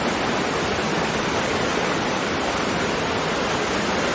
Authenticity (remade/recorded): recorded